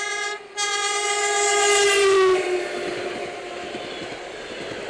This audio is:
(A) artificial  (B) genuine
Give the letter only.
B